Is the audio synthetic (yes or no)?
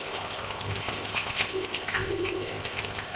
yes